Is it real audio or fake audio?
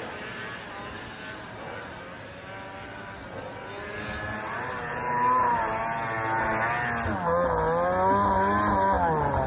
real